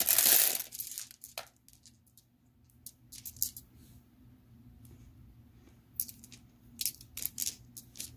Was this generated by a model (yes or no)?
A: no